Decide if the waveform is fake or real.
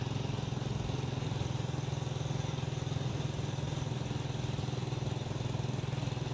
real